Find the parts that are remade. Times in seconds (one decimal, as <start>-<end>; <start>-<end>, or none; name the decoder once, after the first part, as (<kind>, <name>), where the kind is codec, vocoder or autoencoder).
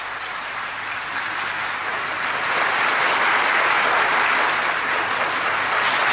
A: none